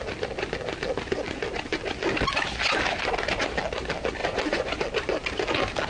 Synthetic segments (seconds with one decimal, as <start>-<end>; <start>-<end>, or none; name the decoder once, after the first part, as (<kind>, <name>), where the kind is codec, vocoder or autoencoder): 4.2-4.8 (vocoder, Vocos)